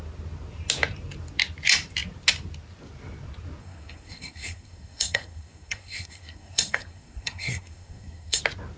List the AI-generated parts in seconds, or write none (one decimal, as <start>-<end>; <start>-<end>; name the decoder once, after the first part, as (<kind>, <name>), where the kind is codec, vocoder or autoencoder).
3.6-8.4 (codec, SNAC)